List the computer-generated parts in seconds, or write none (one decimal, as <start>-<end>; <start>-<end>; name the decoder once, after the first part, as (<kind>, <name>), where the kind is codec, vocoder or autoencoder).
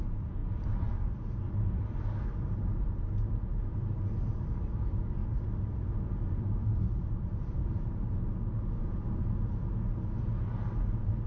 8.8-9.3 (vocoder, Vocos)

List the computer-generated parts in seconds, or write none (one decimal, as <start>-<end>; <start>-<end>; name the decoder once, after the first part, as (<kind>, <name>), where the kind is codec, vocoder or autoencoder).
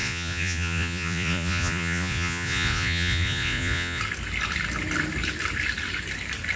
0.0-4.0 (vocoder, Vocos)